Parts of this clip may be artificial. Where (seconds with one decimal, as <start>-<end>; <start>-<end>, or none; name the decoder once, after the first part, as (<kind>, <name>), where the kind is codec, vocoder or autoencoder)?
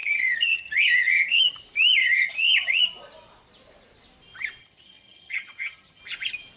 0.0-1.4 (vocoder, HiFi-GAN); 2.0-2.8; 4.6-6.0